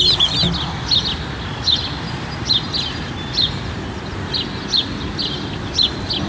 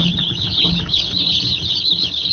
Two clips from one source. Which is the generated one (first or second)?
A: second